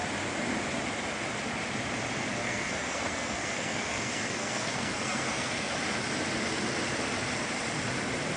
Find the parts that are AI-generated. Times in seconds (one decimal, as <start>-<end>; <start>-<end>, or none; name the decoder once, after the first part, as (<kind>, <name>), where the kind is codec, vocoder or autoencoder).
2.4-5.7 (codec, SNAC)